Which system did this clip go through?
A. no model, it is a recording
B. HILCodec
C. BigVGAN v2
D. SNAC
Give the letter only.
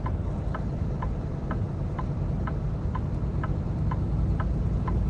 A